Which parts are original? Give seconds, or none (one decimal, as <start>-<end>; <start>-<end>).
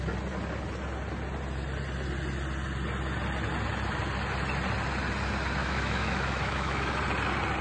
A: 0.0-5.6; 7.0-7.6